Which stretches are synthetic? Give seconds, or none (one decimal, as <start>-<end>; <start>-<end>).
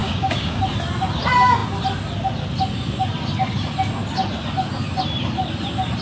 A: 0.0-0.6